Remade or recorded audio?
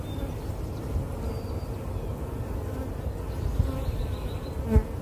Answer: recorded